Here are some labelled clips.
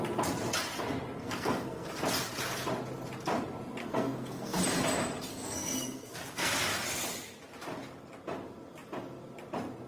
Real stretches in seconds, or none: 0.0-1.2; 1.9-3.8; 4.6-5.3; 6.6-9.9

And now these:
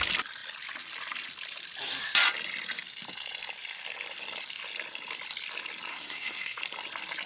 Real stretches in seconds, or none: 0.0-5.9; 6.6-7.3

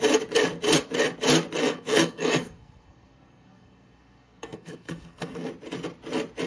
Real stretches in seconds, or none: 0.0-1.6; 5.5-6.5

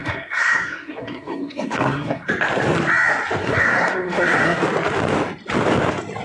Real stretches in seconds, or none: 2.3-3.4; 4.6-6.2

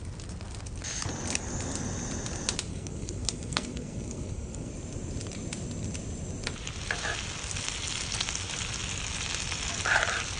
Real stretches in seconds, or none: 0.0-2.7; 4.7-10.4

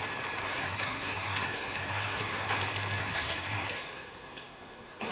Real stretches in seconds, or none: 0.0-0.4; 2.5-3.0

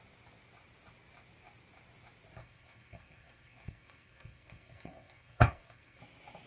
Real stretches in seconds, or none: 0.0-2.4; 6.0-6.5

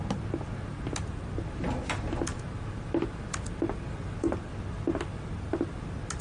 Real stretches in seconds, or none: 0.0-6.2